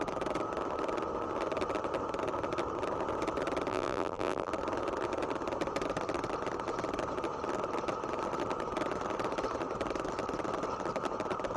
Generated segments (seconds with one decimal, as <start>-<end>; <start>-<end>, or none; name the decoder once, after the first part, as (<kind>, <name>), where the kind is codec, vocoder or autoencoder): 3.7-4.5 (vocoder, BigVGAN v2)